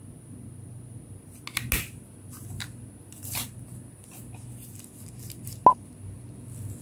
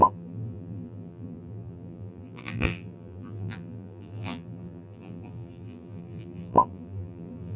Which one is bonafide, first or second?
first